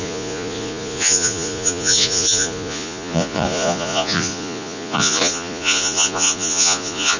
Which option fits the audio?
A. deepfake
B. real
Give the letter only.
A